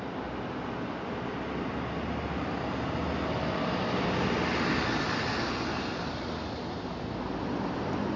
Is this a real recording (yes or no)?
yes